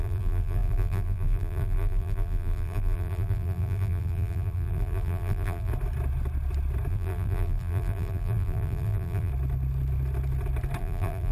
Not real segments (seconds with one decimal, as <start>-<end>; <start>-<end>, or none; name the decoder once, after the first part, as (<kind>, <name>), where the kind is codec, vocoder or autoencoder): 0.0-5.7 (vocoder, BigVGAN v2); 6.9-9.3; 10.8-11.3